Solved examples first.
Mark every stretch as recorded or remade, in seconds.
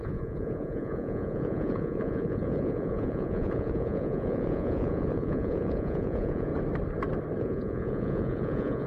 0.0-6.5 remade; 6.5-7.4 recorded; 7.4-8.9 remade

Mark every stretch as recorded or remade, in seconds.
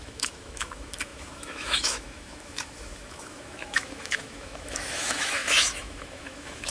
0.0-6.7 remade